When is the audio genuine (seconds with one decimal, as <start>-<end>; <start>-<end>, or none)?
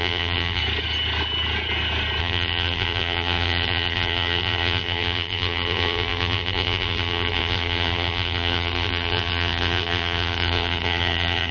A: 0.6-2.2